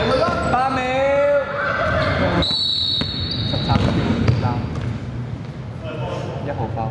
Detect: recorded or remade recorded